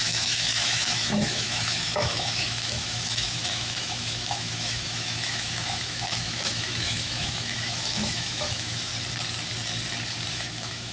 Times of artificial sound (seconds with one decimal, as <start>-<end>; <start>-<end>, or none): 0.0-8.9; 10.3-10.9